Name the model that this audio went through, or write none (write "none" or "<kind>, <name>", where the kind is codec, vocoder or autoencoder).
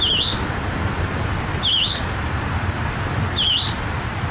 vocoder, BigVGAN v2